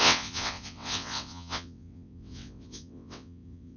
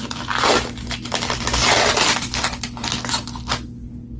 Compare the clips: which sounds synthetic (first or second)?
first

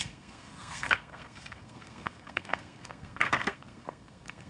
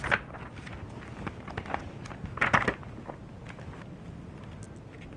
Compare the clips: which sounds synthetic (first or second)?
first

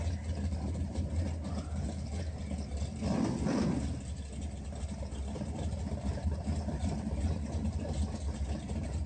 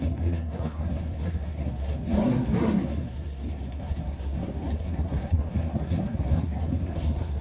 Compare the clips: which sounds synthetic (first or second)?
second